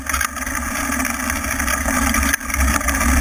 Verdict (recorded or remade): recorded